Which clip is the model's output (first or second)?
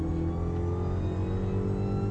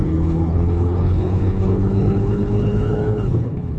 second